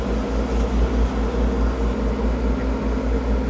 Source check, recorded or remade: recorded